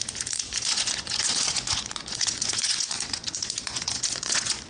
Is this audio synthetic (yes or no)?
yes